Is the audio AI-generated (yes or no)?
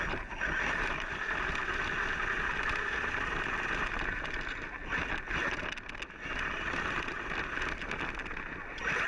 no